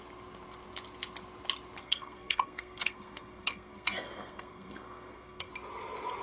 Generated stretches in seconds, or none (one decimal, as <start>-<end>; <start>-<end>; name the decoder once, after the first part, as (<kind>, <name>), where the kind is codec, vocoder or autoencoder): 1.8-5.5 (codec, SNAC)